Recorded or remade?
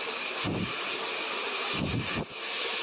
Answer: recorded